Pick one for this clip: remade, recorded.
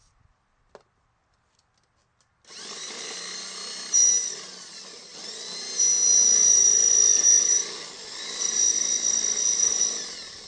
recorded